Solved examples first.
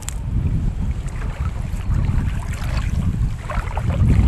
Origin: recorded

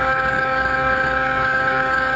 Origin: remade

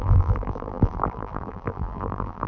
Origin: remade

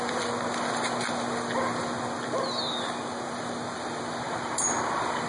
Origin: recorded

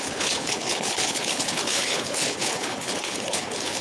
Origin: remade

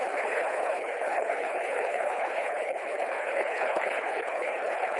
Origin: remade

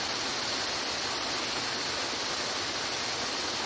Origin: recorded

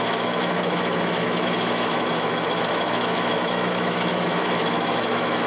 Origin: remade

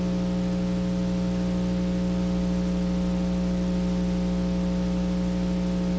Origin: recorded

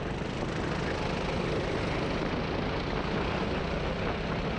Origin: recorded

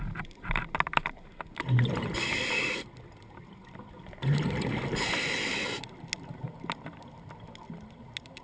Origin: recorded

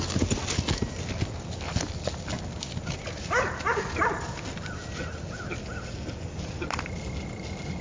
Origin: recorded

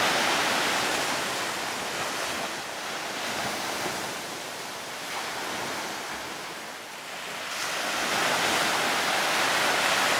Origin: recorded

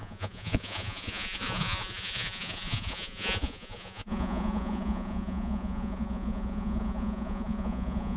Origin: remade